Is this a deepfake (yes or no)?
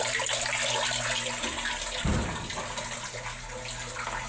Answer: no